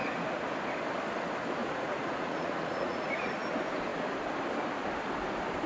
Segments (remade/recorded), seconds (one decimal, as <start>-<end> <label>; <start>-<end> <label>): 0.0-1.6 recorded; 1.6-3.3 remade; 3.3-5.7 recorded